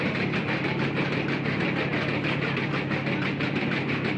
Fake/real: real